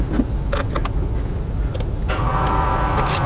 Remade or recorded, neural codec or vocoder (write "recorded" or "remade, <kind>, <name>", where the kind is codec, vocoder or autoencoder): recorded